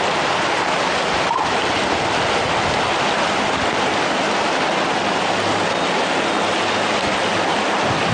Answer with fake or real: real